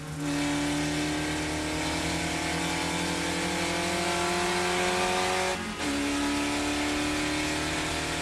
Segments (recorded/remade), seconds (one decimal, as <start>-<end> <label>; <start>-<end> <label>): 0.0-8.2 recorded